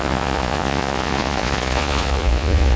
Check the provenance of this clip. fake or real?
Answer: fake